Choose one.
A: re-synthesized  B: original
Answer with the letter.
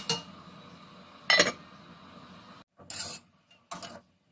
B